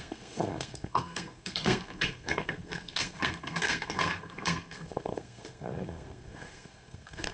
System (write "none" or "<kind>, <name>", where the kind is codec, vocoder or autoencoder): codec, SNAC